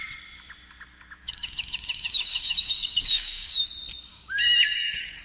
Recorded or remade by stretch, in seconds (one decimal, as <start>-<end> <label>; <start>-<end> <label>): 0.0-1.2 recorded; 1.2-3.6 remade; 3.6-4.1 recorded; 4.1-5.2 remade

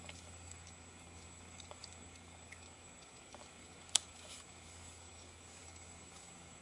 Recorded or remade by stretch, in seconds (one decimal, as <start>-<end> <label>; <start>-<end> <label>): 0.0-6.6 remade

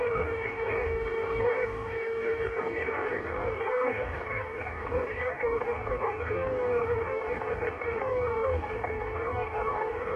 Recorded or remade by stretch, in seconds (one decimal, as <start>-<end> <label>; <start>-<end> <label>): 0.0-10.2 remade

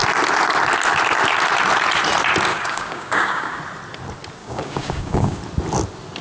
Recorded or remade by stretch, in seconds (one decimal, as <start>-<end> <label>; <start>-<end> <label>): 0.0-2.5 recorded; 2.5-3.6 remade; 3.6-4.4 recorded; 4.4-5.4 remade; 5.4-6.2 recorded

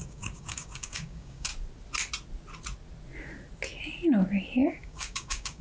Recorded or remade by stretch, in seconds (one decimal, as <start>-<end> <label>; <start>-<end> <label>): 0.0-1.5 remade; 1.5-4.7 recorded; 4.7-5.6 remade

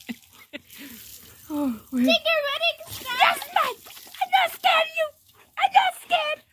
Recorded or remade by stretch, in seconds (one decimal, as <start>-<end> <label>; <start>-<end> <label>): 0.0-4.7 recorded; 4.7-6.5 remade

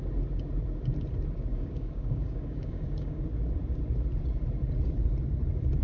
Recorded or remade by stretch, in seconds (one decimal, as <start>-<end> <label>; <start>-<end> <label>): 0.0-1.5 recorded; 1.5-3.2 remade; 3.2-5.8 recorded

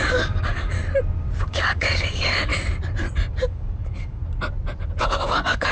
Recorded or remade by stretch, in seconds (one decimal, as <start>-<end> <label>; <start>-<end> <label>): 0.0-0.8 remade; 0.8-1.4 recorded; 1.4-2.5 remade; 2.5-3.3 recorded; 3.3-4.2 remade; 4.2-5.0 recorded; 5.0-5.7 remade